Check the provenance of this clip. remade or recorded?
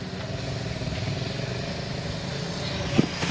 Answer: recorded